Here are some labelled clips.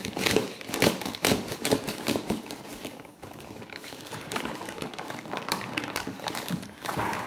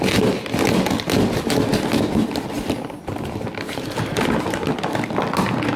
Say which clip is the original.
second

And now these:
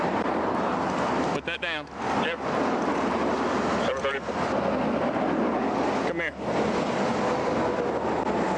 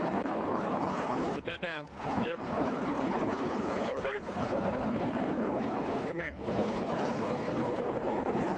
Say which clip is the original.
first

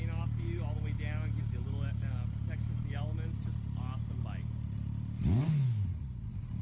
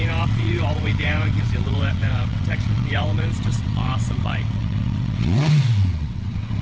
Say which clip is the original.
first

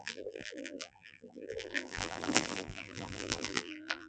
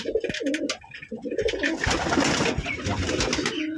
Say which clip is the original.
second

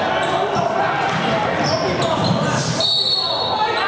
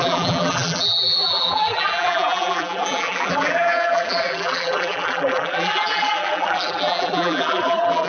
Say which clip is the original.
first